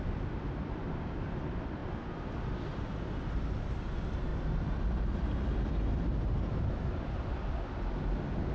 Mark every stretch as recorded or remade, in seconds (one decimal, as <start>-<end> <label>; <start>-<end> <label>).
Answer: 0.0-4.3 recorded; 4.3-7.9 remade; 7.9-8.5 recorded